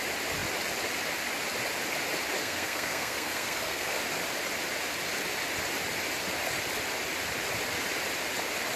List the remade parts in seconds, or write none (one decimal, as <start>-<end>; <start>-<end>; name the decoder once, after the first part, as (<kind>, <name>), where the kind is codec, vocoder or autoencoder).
2.4-4.0 (codec, SNAC)